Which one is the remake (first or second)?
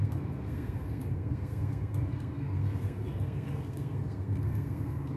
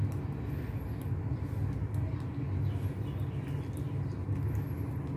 first